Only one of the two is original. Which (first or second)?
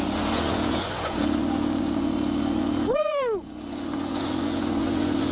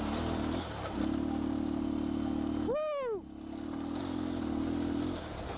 second